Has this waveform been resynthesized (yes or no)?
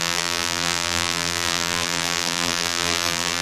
yes